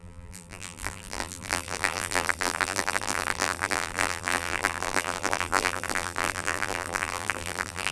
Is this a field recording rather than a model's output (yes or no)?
no